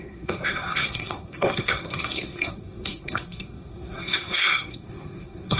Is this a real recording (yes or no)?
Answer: no